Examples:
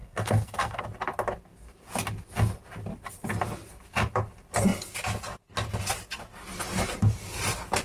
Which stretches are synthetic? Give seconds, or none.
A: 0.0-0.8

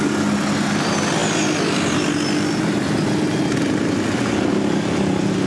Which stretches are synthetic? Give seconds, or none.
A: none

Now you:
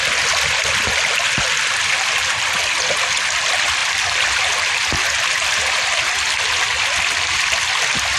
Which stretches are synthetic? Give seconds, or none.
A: none